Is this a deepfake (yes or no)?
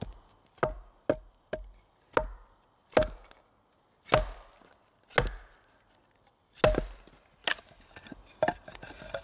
no